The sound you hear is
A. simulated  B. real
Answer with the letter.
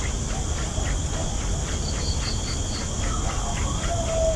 B